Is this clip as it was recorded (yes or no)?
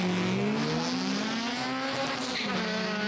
yes